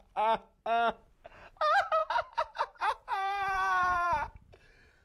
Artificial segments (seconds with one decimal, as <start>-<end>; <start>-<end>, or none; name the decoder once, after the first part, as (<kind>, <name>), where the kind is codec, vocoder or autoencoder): 2.0-5.0 (vocoder, BigVGAN v2)